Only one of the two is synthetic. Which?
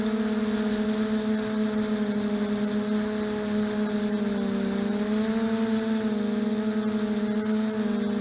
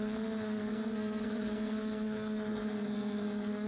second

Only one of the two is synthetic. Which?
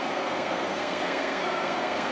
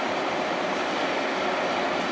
first